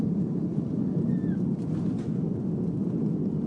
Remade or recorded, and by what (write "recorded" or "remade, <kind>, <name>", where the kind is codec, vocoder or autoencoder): remade, vocoder, BigVGAN v2